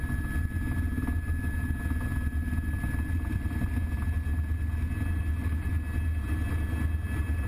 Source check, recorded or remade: recorded